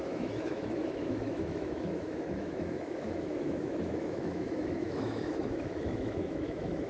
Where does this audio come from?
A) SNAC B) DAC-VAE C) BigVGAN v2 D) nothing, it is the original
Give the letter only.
B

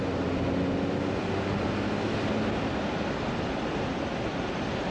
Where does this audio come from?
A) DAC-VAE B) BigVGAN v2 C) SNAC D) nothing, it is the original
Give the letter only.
D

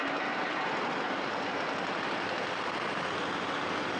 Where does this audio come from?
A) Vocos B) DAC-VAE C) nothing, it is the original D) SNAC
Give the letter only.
C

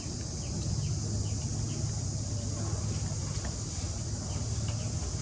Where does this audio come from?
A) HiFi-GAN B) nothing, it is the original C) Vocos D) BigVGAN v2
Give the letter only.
B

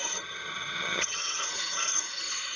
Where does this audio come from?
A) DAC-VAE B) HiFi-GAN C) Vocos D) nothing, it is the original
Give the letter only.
B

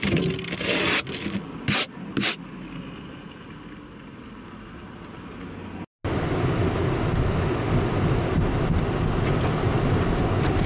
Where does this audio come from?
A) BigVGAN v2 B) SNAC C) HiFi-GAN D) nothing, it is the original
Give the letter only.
D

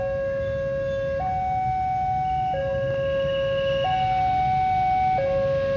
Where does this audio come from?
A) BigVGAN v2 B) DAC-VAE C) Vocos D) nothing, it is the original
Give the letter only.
D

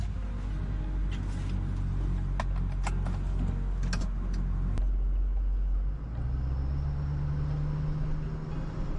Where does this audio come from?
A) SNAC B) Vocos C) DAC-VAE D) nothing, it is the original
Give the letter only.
D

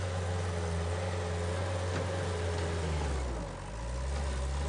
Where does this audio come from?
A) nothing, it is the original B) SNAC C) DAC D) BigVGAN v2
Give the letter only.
A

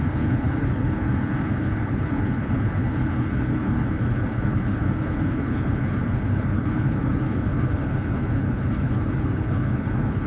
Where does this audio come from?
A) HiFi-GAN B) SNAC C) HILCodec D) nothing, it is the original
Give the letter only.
C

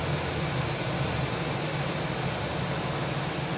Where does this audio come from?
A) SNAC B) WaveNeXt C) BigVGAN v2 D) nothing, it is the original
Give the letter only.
D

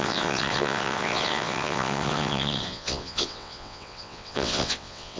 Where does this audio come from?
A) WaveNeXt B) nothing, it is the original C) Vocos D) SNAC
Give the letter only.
A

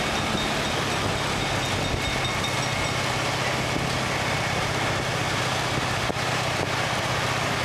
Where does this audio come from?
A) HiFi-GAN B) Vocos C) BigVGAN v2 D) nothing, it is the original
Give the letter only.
D